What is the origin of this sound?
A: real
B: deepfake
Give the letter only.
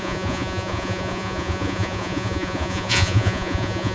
B